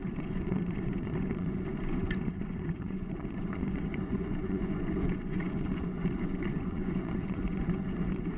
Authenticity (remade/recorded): remade